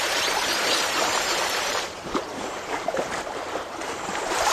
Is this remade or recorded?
remade